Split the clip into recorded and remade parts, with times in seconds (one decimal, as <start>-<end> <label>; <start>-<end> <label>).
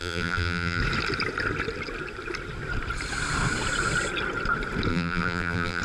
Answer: 0.0-0.8 remade; 0.8-4.9 recorded; 4.9-5.8 remade